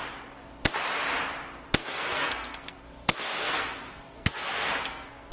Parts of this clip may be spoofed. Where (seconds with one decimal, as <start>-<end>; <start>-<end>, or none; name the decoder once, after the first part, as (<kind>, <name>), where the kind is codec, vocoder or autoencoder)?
1.8-5.3 (codec, SNAC)